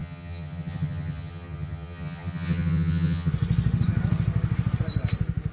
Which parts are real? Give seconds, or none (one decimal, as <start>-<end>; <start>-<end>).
3.3-5.5